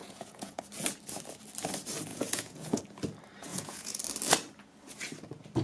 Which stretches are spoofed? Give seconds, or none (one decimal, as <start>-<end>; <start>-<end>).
0.0-0.6; 2.1-2.8; 3.5-4.0

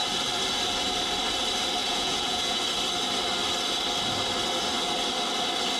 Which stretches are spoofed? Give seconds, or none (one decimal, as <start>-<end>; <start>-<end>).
1.8-2.6